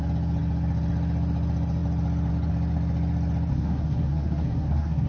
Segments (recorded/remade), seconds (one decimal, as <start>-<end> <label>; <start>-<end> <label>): 0.0-3.5 recorded; 3.5-5.1 remade